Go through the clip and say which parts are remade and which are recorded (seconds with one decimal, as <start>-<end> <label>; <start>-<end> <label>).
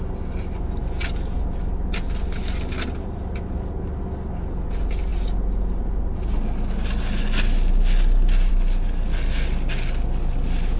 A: 0.0-10.8 recorded